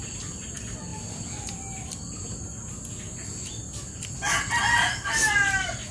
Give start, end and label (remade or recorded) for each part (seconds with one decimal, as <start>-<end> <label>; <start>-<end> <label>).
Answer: 0.0-5.9 recorded